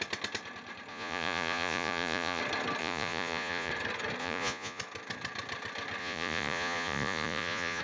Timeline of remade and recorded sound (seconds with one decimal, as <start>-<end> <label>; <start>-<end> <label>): 0.0-0.9 recorded; 0.9-2.4 remade; 2.4-2.8 recorded; 2.8-3.7 remade; 3.7-4.2 recorded; 4.2-4.8 remade; 4.8-6.0 recorded; 6.0-7.8 remade